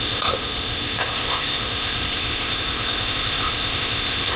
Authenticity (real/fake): fake